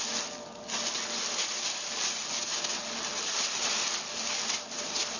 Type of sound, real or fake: real